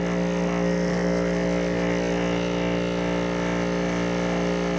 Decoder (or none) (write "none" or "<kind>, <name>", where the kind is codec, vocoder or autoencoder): none